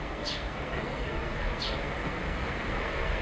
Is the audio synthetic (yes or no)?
yes